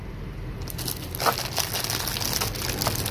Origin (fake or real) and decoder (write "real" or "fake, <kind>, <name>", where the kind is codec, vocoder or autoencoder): real